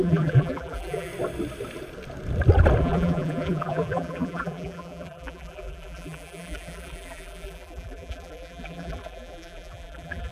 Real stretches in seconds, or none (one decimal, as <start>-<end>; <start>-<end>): 1.1-2.8